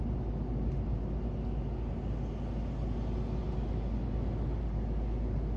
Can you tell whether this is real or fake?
real